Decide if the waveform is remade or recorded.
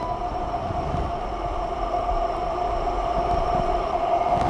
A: remade